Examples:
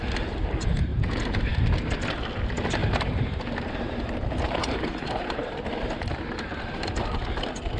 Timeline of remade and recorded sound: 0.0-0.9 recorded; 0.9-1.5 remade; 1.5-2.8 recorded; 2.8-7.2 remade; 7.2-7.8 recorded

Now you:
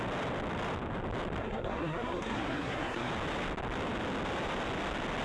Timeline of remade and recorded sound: 0.0-1.4 recorded; 1.4-3.1 remade; 3.1-5.2 recorded